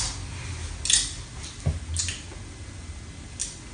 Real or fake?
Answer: real